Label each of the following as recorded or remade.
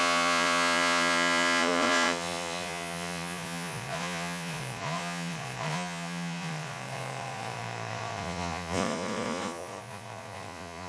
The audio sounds remade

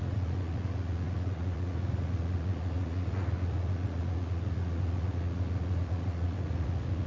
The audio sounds remade